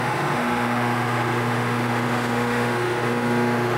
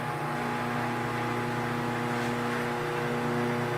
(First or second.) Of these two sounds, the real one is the second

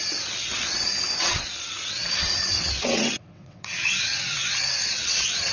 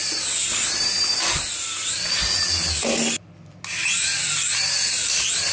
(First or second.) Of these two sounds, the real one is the second